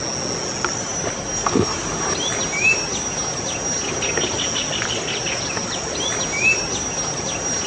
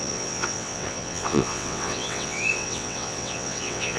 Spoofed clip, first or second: second